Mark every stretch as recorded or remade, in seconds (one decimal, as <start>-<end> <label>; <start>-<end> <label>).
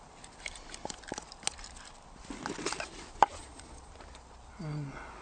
0.0-3.4 recorded; 3.4-3.9 remade; 3.9-5.2 recorded